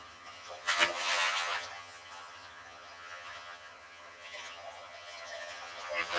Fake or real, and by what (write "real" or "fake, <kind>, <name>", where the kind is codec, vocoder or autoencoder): fake, vocoder, HiFi-GAN